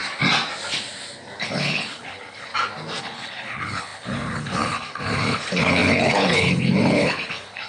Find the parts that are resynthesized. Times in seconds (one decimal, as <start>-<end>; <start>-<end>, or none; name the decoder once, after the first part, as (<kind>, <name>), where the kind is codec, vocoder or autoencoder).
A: 1.4-2.5 (codec, HILCodec); 3.0-7.7